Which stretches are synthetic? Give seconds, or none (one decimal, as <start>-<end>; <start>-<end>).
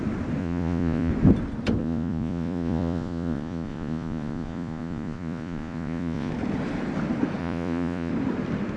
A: 0.4-1.1; 1.8-6.3; 7.4-8.1